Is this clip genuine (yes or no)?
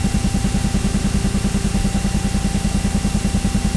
yes